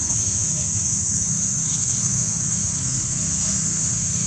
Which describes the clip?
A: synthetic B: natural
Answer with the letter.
A